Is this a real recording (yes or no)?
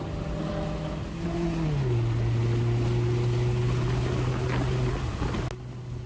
yes